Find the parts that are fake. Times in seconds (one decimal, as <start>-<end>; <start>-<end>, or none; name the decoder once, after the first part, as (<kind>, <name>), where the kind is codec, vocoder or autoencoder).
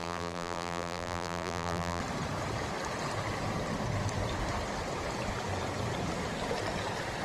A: 0.0-2.0 (vocoder, BigVGAN v2)